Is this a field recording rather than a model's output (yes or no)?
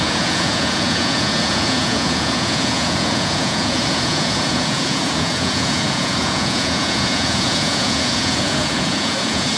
no